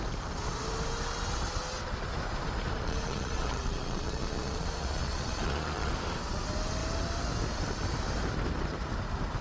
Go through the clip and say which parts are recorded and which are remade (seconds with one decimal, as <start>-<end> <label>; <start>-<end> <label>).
0.0-2.8 recorded; 2.8-5.9 remade; 5.9-9.4 recorded